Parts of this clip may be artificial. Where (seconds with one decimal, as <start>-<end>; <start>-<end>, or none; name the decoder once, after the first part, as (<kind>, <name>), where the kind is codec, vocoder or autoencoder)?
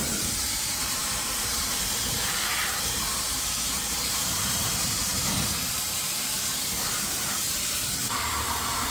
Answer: 0.0-5.1 (vocoder, BigVGAN v2); 5.7-8.9